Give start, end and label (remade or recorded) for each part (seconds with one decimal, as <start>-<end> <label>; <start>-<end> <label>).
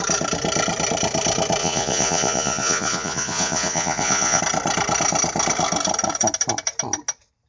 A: 0.0-1.6 recorded; 1.6-4.4 remade; 4.4-7.5 recorded